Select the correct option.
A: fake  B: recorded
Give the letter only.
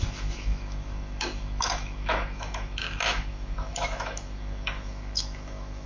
A